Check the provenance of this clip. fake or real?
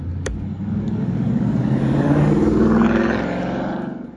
fake